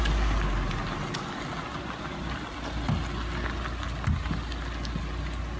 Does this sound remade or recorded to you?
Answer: recorded